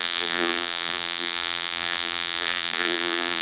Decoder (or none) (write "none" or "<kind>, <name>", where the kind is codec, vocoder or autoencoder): vocoder, BigVGAN v2